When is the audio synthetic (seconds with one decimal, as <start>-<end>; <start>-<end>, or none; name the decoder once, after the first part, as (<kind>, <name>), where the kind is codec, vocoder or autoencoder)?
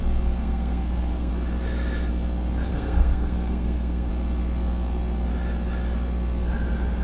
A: 0.4-1.3 (codec, SNAC); 2.7-4.1